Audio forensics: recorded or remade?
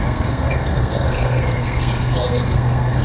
remade